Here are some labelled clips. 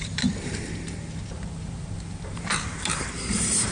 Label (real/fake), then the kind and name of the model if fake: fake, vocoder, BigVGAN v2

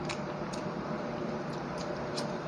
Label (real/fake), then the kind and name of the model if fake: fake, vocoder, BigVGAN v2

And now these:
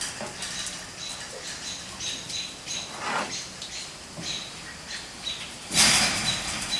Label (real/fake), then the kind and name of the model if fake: fake, vocoder, BigVGAN v2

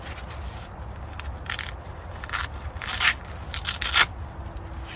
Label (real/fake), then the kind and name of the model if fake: real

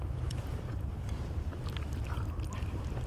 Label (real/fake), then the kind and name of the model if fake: fake, vocoder, BigVGAN v2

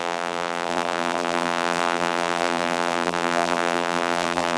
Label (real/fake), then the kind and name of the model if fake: fake, vocoder, BigVGAN v2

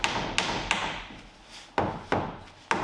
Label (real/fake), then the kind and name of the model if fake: real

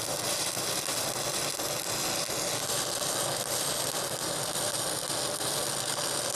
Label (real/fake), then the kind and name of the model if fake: real